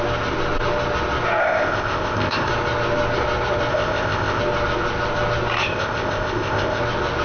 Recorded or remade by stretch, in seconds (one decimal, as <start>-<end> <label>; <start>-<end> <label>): 0.0-1.4 recorded; 1.4-2.5 remade; 2.5-3.7 recorded; 3.7-4.4 remade; 4.4-5.6 recorded; 5.6-6.8 remade; 6.8-7.2 recorded